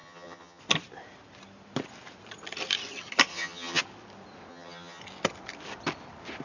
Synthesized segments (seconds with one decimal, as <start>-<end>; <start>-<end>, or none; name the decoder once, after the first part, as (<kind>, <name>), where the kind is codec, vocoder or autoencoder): 0.0-0.6 (vocoder, HiFi-GAN); 3.3-3.8; 4.5-5.0